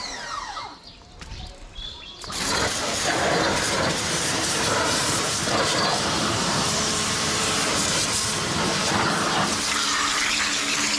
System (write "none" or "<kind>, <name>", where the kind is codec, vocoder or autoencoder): vocoder, BigVGAN v2